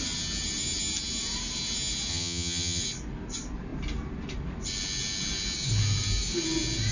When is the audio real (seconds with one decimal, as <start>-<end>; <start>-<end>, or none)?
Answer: 0.0-2.1; 2.8-6.9